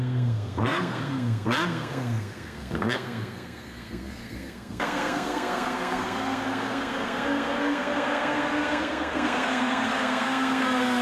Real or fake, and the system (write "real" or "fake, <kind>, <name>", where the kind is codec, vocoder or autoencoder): fake, codec, SNAC